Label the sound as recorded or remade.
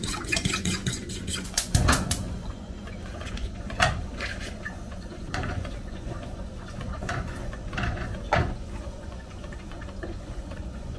remade